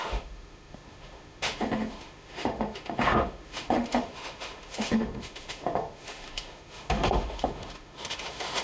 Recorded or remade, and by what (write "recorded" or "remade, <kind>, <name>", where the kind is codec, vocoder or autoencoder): remade, autoencoder, DAC-VAE